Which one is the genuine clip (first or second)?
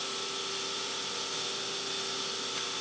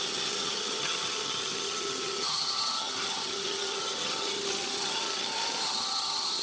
first